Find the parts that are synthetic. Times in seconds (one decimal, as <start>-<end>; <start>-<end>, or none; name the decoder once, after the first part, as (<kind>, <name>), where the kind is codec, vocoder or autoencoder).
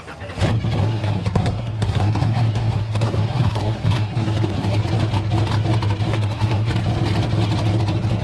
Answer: 0.8-4.8 (codec, SNAC); 6.1-6.7